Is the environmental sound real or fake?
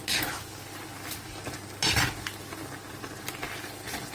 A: real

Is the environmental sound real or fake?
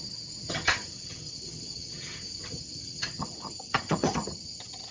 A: fake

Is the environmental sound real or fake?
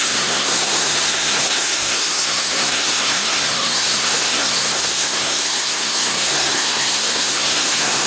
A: fake